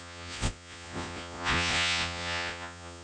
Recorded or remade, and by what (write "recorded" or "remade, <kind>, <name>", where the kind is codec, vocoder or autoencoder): remade, vocoder, Vocos